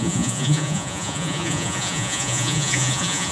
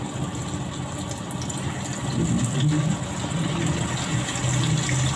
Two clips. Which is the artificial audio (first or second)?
first